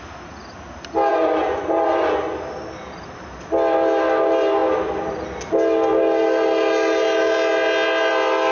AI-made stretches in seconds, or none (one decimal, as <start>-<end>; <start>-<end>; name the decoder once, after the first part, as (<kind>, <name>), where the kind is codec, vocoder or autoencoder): 1.1-2.1 (vocoder, Vocos)